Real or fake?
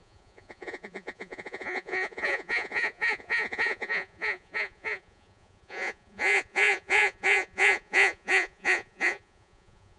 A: fake